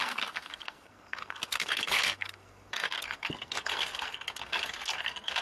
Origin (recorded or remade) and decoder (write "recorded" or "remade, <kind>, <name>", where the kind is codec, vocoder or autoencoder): remade, codec, SNAC